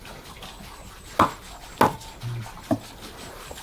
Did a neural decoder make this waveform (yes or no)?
no